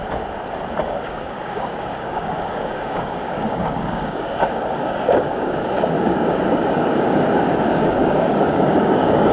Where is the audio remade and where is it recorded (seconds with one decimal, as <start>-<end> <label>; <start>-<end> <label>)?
0.0-0.8 recorded; 0.8-9.3 remade

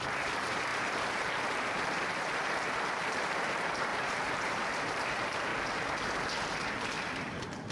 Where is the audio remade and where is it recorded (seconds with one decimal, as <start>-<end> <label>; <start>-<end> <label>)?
0.0-5.5 remade; 5.5-7.1 recorded; 7.1-7.7 remade

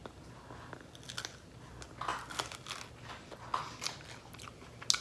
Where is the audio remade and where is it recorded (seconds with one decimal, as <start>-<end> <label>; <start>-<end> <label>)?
0.0-5.0 recorded

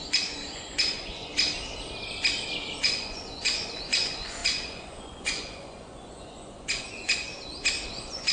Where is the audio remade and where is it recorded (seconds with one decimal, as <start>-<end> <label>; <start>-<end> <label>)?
0.0-1.3 remade; 1.3-2.8 recorded; 2.8-7.3 remade; 7.3-7.9 recorded; 7.9-8.3 remade

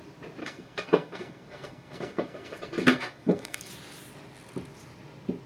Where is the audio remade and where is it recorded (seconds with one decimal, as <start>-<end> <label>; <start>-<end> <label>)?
0.0-0.4 recorded; 0.4-3.7 remade; 3.7-5.5 recorded

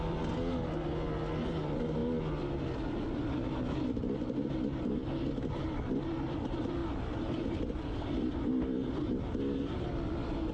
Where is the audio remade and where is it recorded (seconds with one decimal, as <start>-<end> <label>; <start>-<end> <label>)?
0.0-10.5 recorded

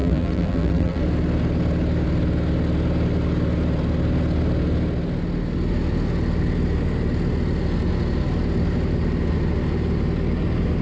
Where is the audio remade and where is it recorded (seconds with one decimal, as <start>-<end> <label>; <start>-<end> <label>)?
0.0-1.0 remade; 1.0-10.8 recorded

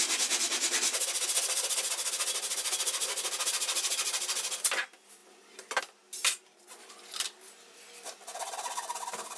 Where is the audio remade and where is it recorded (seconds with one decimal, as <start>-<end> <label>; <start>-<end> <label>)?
0.0-9.4 recorded